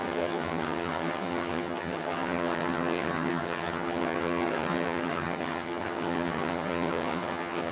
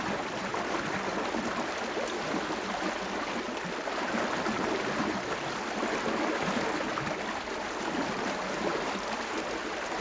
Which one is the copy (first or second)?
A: first